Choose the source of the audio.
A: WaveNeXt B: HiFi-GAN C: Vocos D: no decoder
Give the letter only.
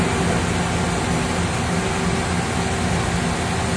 D